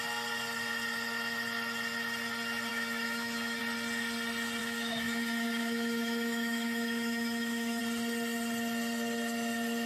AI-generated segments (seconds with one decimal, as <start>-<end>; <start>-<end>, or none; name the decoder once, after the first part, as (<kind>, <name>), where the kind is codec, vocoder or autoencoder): 2.7-3.6 (autoencoder, DAC-VAE); 4.6-7.8